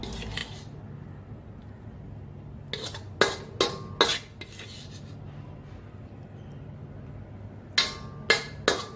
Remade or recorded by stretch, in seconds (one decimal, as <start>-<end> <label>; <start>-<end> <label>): 0.0-9.0 recorded